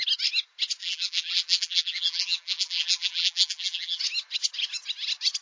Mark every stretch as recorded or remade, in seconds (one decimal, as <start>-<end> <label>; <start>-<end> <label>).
0.0-0.8 recorded; 0.8-4.0 remade; 4.0-5.4 recorded